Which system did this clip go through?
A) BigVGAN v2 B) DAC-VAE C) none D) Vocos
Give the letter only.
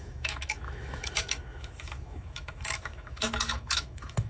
B